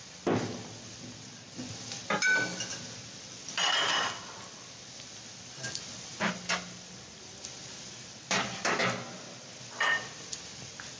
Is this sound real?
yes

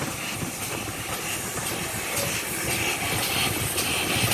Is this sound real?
yes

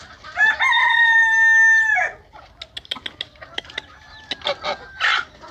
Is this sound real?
yes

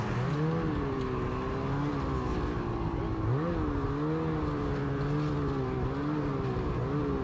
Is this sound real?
yes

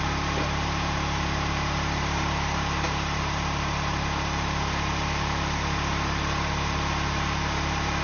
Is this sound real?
no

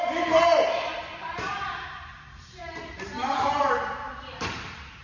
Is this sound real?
no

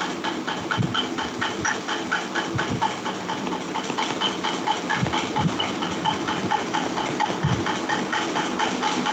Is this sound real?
yes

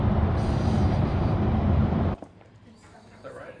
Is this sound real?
no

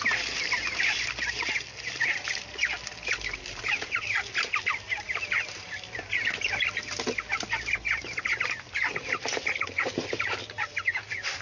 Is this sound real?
no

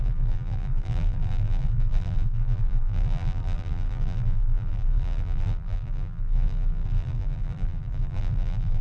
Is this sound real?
no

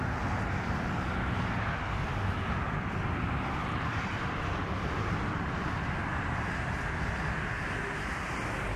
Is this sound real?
yes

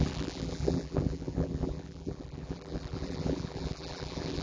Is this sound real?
no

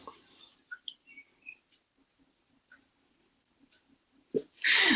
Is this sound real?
no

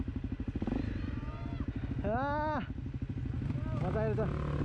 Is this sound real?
yes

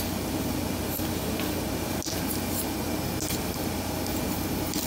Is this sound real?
yes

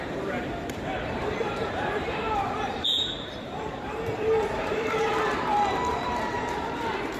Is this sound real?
no